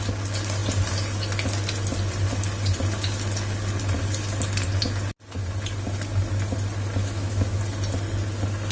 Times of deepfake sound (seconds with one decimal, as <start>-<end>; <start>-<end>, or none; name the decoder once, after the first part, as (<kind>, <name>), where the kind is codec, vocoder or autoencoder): 7.0-7.6 (autoencoder, DAC-VAE)